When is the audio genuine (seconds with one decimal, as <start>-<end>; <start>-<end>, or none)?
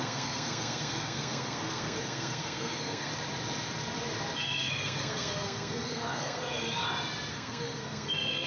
3.1-4.4; 6.8-7.3